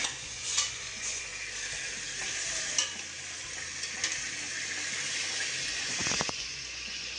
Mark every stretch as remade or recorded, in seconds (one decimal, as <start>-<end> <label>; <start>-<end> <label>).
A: 0.0-1.3 remade; 1.3-5.6 recorded; 5.6-7.2 remade